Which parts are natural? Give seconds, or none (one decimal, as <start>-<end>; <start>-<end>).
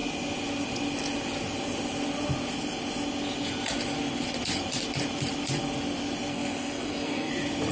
0.0-6.3; 7.3-7.7